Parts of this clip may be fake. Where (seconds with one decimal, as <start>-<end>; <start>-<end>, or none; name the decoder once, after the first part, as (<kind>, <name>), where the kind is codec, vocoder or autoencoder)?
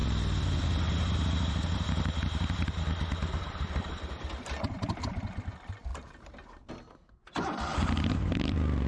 5.9-6.7 (vocoder, BigVGAN v2); 7.7-8.9